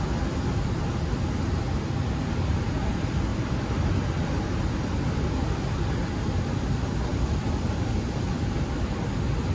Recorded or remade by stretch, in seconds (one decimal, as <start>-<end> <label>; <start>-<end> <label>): 0.0-3.3 recorded; 3.3-3.9 remade; 3.9-7.1 recorded; 7.1-8.5 remade; 8.5-9.5 recorded